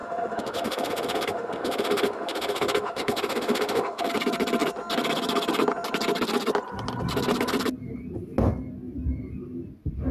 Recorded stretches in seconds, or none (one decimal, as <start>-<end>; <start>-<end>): 4.1-10.1

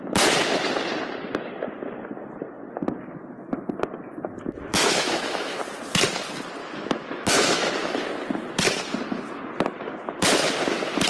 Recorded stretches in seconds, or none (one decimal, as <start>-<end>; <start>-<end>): 0.0-4.7; 5.6-6.6; 7.7-11.1

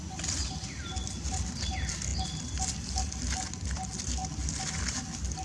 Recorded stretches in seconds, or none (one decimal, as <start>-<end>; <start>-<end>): 0.0-5.4

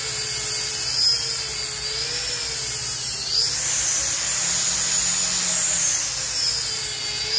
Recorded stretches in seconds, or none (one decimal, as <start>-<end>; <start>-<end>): 0.0-7.4

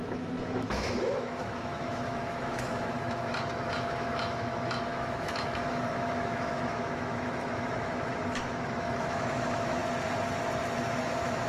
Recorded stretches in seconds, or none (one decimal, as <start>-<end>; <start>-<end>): 9.8-11.0

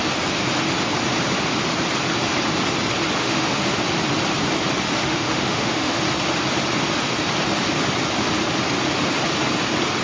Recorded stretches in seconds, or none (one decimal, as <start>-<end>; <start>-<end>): 0.0-3.2; 3.8-5.0; 6.0-10.0

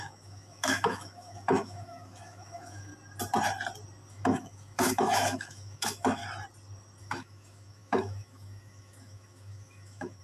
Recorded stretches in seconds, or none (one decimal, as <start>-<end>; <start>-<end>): 2.9-4.1; 6.2-7.0

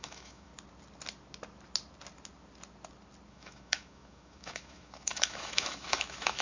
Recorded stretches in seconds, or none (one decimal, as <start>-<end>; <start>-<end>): 0.5-3.3